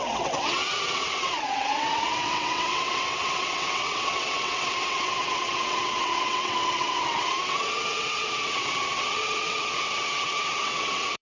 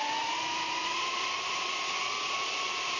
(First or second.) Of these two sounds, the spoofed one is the first